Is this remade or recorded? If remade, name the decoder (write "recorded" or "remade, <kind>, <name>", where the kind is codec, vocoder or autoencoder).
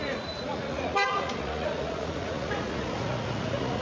remade, vocoder, Vocos